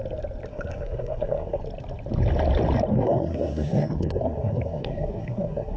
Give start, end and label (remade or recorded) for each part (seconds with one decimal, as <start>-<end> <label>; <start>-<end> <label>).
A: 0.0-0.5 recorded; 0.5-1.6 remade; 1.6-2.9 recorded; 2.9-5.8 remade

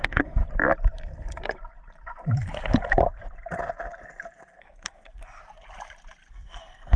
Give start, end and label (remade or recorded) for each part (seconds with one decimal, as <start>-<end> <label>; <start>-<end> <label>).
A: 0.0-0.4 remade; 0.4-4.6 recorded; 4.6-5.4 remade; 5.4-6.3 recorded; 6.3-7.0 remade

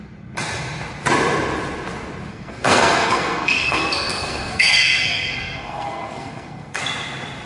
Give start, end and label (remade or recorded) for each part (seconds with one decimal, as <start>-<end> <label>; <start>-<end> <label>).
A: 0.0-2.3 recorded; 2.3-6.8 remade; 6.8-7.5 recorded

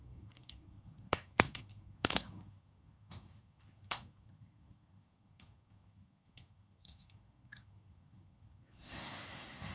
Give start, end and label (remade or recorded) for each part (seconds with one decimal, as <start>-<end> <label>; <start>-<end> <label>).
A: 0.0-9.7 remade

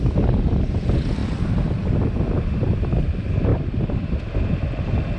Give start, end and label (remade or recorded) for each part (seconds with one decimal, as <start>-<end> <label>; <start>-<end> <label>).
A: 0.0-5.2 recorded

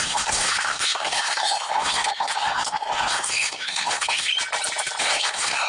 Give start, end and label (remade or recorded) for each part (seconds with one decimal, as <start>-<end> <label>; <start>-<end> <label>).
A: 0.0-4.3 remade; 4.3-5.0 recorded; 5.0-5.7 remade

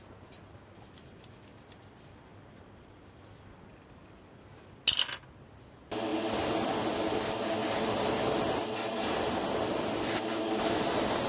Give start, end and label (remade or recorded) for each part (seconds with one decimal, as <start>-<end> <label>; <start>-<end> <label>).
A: 0.0-11.3 recorded

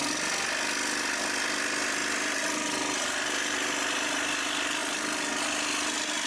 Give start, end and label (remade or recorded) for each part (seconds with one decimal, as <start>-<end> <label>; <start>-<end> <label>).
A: 0.0-6.3 recorded